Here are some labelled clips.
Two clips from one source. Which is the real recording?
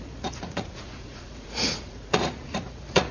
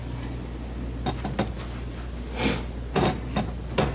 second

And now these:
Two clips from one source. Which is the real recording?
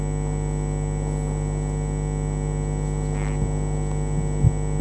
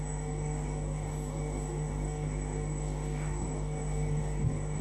first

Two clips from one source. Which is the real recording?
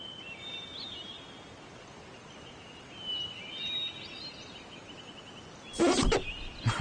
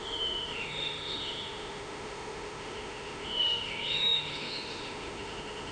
first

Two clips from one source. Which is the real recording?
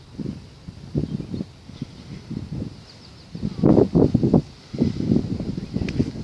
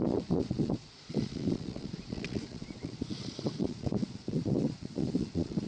first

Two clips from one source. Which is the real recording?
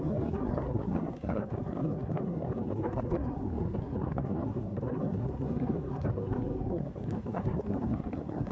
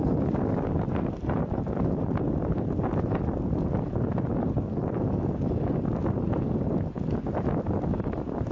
second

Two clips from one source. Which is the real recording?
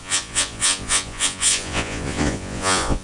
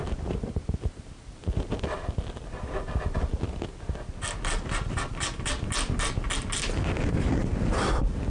second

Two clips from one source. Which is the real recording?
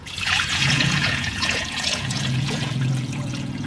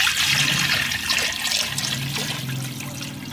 second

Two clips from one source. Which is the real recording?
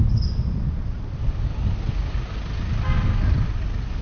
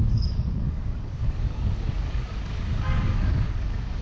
first